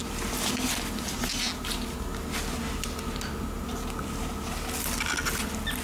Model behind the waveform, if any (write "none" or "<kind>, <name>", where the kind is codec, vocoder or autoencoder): none